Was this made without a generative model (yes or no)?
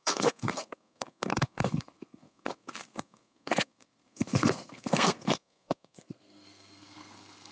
no